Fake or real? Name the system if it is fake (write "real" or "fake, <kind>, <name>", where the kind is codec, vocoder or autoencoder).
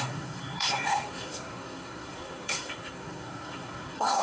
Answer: fake, codec, SNAC